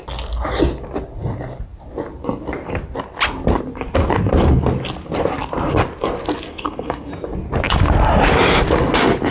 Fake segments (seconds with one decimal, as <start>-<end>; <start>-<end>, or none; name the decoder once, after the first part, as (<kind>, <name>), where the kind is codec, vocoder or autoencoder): 6.5-7.1 (codec, SNAC)